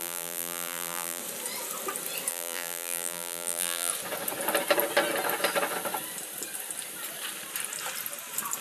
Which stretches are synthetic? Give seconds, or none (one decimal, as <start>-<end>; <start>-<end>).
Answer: 0.0-1.2; 2.3-3.9